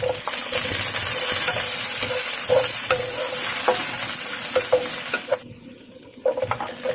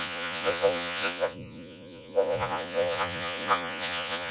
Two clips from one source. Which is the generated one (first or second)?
second